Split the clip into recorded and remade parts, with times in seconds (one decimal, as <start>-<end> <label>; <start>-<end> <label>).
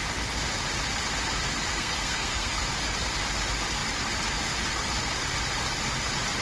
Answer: 0.0-1.7 recorded; 1.7-2.6 remade; 2.6-6.4 recorded